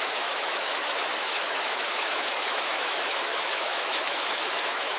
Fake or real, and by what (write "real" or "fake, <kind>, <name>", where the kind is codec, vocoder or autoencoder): fake, autoencoder, DAC-VAE